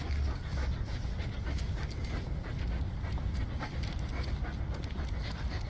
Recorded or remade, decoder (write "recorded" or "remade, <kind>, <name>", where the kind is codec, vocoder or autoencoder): recorded